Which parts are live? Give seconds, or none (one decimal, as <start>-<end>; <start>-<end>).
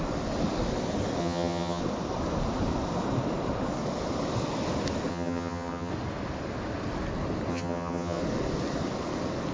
0.0-1.2; 1.8-5.1; 5.9-7.5; 8.2-9.5